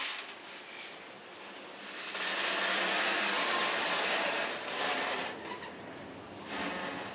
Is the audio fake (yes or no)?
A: no